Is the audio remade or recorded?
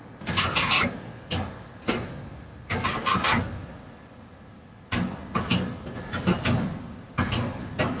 recorded